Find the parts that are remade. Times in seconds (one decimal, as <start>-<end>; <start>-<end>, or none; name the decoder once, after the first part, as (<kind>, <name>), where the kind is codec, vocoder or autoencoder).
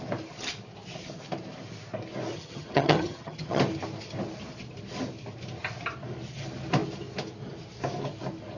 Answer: 2.3-3.6 (vocoder, HiFi-GAN)